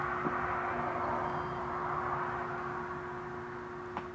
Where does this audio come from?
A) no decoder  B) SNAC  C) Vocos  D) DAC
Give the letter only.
A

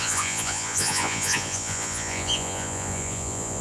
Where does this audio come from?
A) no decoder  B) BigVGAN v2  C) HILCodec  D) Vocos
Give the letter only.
D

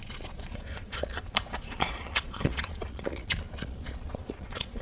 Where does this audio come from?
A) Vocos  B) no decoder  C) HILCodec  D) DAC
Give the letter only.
A